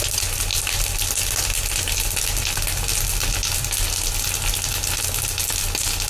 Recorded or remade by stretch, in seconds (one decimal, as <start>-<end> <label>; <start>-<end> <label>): 0.0-6.1 recorded

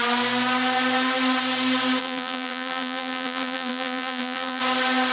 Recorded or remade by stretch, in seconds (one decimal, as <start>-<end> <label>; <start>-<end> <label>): 0.0-2.0 recorded; 2.0-4.6 remade; 4.6-5.1 recorded

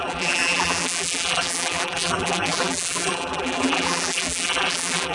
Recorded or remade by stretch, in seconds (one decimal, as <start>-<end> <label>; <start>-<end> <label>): 0.0-5.1 remade

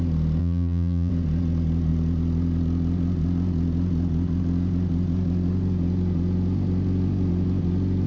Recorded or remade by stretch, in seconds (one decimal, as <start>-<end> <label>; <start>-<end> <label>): 0.0-0.4 recorded; 0.4-1.1 remade; 1.1-8.1 recorded